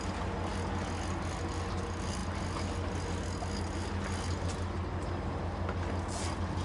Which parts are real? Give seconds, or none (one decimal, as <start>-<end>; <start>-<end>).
0.0-6.6